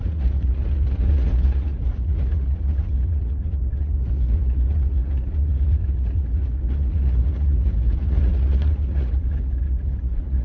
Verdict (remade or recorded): remade